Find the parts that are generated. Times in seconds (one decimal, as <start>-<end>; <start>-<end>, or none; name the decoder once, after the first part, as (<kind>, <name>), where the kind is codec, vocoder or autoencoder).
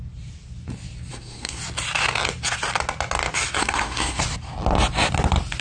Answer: 1.1-1.6 (codec, SNAC); 3.6-4.2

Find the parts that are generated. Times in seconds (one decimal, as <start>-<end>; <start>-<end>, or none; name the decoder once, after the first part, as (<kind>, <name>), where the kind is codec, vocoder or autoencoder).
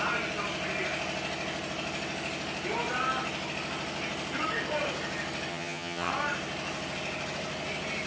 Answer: 5.5-6.1 (vocoder, HiFi-GAN)